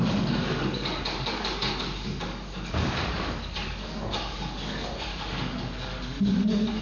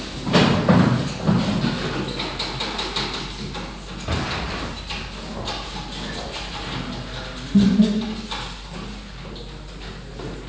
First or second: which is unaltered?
second